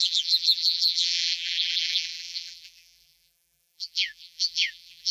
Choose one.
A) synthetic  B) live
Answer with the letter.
A